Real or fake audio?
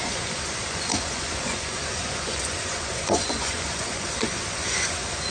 fake